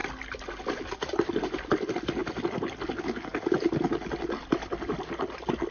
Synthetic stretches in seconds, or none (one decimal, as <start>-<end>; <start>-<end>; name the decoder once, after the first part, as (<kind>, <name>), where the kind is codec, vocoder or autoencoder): none